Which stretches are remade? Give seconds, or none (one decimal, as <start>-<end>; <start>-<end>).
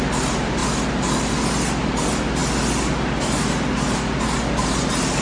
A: none